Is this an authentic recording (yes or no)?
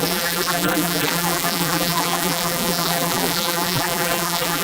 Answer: no